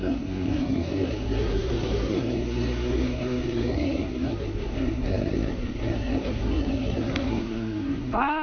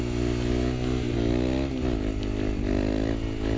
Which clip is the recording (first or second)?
second